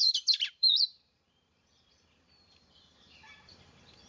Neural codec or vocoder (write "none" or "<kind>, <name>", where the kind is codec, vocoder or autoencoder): vocoder, BigVGAN v2